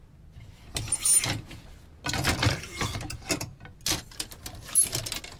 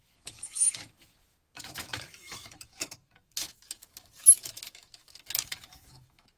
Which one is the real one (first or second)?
first